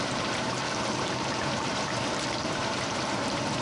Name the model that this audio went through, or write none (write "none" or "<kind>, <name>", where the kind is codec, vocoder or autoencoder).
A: vocoder, BigVGAN v2